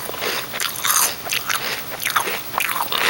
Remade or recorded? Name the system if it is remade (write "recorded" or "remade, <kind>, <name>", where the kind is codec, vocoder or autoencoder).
recorded